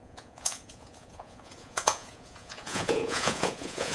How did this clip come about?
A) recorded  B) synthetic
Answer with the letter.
B